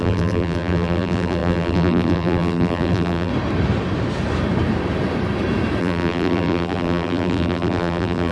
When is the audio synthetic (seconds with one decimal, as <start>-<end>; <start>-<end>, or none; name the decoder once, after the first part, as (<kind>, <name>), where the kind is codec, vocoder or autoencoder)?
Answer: 0.0-3.3 (vocoder, BigVGAN v2); 5.8-8.3